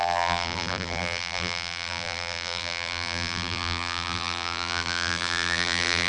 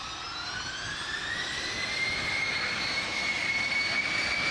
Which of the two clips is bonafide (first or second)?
second